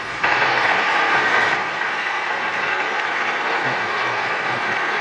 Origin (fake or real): fake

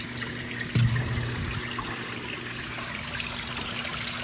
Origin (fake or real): real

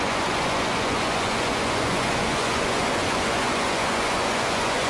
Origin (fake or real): fake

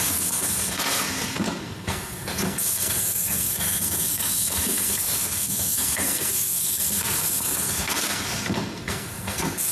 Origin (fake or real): fake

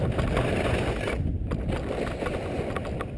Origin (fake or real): real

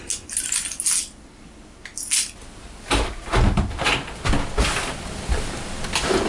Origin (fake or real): real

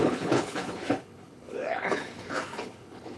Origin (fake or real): fake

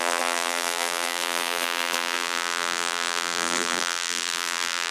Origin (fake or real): fake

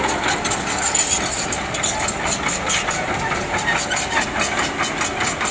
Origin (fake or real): real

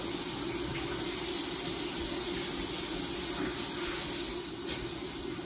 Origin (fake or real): real